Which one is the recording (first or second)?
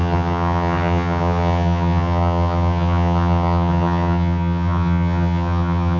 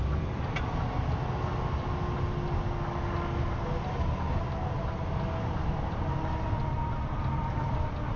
second